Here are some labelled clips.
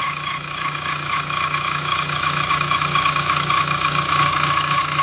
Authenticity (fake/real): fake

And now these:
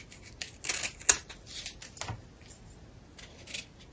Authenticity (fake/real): real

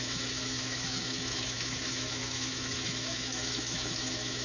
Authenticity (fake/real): fake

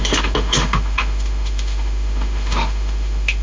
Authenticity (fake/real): fake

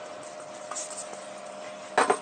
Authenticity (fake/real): real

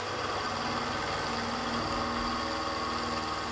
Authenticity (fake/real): real